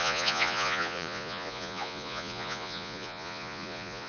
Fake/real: fake